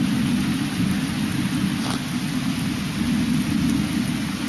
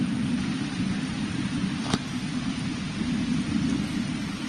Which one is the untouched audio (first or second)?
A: first